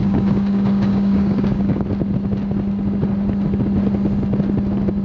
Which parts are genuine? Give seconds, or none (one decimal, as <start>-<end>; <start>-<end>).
1.8-5.0